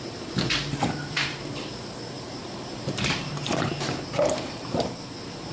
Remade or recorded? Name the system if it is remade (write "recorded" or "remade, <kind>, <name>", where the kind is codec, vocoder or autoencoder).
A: remade, vocoder, BigVGAN v2